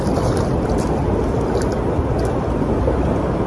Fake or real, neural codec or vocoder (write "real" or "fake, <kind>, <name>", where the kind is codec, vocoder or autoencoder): real